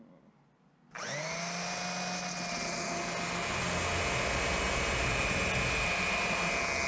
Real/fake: real